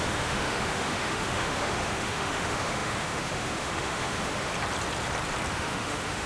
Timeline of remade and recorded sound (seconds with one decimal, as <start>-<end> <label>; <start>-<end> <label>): 0.0-4.5 remade; 4.5-5.5 recorded; 5.5-6.3 remade